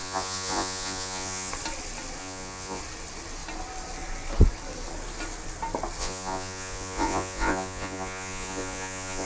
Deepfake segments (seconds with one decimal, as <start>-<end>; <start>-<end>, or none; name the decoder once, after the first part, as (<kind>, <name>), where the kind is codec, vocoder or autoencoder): 0.0-1.5 (vocoder, Vocos); 2.2-2.8; 6.0-9.3